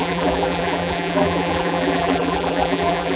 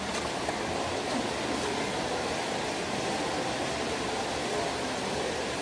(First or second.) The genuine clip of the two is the second